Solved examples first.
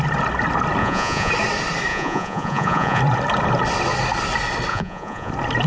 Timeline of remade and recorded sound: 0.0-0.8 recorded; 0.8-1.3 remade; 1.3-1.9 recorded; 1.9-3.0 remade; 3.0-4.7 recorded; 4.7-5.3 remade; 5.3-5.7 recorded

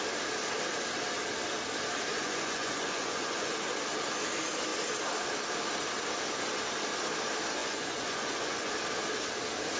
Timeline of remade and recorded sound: 0.0-2.1 recorded; 2.1-3.5 remade; 3.5-7.6 recorded; 7.6-8.7 remade; 8.7-9.8 recorded

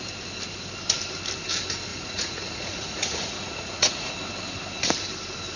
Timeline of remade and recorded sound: 0.0-1.9 recorded; 1.9-4.1 remade; 4.1-5.6 recorded

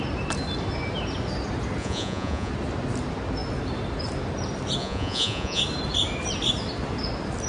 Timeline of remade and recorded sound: 0.0-1.8 recorded; 1.8-2.5 remade; 2.5-4.8 recorded; 4.8-5.6 remade; 5.6-7.5 recorded

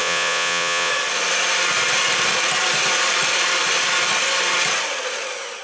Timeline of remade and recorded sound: 0.0-0.9 remade; 0.9-5.6 recorded